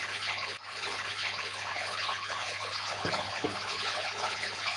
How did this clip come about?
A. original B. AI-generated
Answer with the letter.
B